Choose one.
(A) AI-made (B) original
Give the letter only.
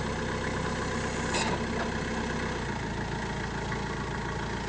B